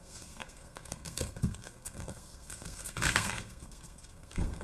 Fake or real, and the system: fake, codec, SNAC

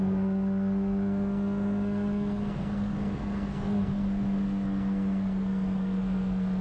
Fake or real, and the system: fake, codec, SNAC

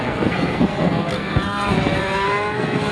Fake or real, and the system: fake, codec, SNAC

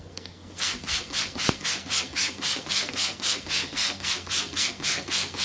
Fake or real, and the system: fake, codec, SNAC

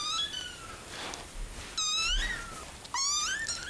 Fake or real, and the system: real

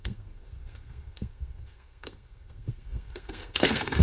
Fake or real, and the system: fake, codec, SNAC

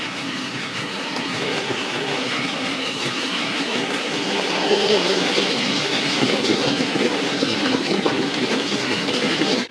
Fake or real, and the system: fake, codec, SNAC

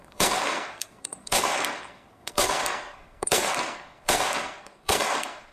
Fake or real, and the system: fake, codec, SNAC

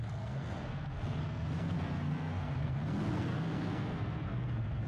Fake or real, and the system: fake, codec, SNAC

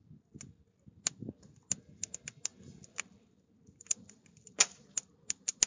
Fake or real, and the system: real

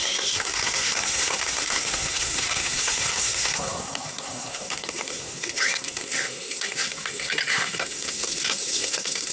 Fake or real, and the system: fake, codec, SNAC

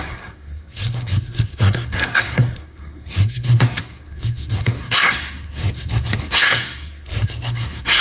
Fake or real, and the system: fake, codec, SNAC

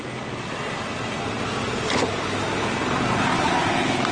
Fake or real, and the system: real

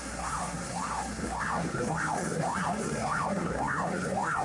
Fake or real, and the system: fake, codec, SNAC